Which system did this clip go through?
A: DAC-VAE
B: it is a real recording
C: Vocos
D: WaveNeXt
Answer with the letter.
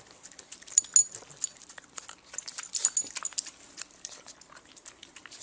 B